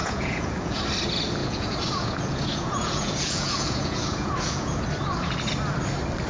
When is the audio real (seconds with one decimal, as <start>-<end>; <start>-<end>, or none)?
0.8-1.4; 4.8-6.3